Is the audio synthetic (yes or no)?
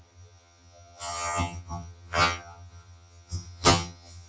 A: yes